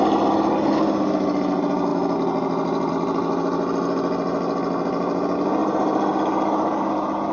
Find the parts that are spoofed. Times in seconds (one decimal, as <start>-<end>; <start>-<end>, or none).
none